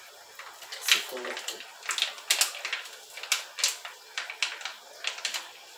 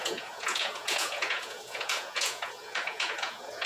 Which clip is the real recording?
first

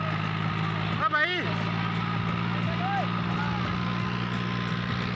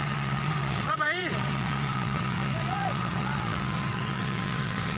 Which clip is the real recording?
first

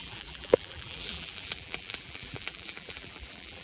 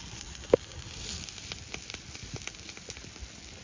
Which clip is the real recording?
second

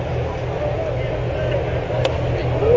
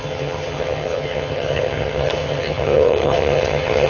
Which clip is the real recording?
first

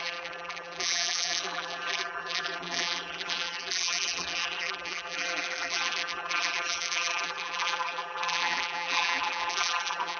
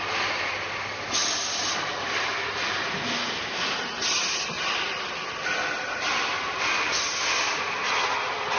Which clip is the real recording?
second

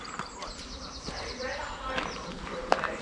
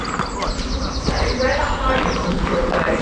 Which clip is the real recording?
second